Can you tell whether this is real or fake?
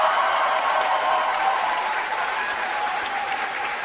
fake